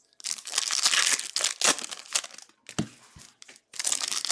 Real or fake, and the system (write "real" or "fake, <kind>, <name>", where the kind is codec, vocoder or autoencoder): real